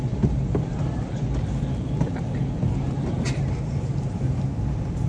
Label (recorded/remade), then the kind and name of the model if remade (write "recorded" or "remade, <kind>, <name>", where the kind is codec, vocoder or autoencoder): remade, vocoder, BigVGAN v2